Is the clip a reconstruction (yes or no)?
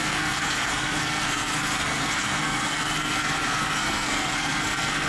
yes